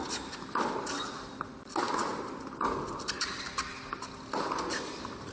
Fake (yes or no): no